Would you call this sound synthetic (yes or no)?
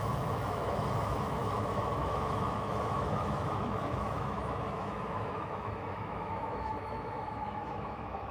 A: yes